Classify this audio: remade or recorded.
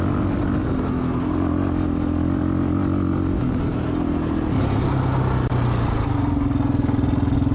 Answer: recorded